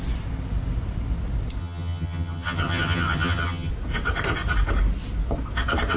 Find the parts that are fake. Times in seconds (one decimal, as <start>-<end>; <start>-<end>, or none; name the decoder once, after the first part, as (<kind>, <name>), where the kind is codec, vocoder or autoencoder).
1.6-3.7 (vocoder, HiFi-GAN)